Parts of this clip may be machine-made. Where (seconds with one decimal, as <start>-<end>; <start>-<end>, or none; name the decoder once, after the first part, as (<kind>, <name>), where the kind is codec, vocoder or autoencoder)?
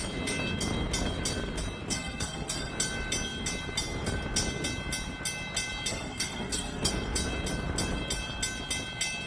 1.9-2.7 (codec, SNAC); 5.9-6.9